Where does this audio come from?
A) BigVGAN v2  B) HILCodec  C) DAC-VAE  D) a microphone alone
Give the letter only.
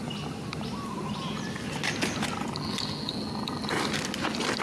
D